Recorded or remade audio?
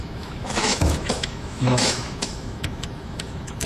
remade